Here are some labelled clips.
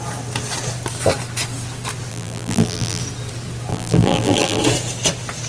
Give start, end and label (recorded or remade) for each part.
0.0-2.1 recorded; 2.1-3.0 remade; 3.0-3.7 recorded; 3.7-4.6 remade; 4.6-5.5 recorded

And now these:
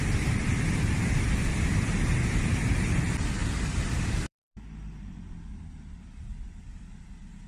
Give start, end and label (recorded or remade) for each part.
0.0-3.4 recorded; 3.4-4.5 remade; 4.5-5.5 recorded; 5.5-6.1 remade; 6.1-7.5 recorded

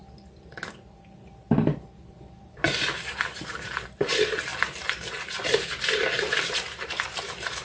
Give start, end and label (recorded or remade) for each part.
0.0-0.7 recorded; 0.7-7.6 remade

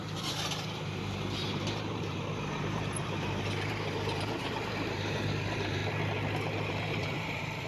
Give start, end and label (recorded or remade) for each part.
0.0-5.8 remade; 5.8-6.7 recorded; 6.7-7.7 remade